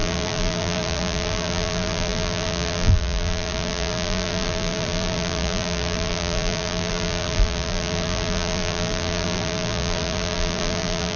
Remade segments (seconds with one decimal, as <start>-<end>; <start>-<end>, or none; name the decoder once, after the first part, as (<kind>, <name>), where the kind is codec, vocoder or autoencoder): 0.0-11.2 (vocoder, BigVGAN v2)